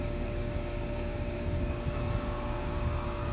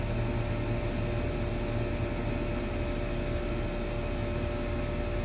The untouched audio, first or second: second